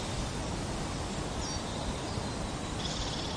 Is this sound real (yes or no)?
yes